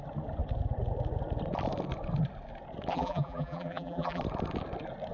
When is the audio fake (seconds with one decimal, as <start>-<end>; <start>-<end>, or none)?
2.9-4.2